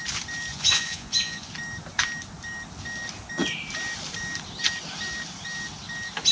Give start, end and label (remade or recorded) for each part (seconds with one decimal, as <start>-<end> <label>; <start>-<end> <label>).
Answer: 0.0-0.5 recorded; 0.5-1.5 remade; 1.5-6.3 recorded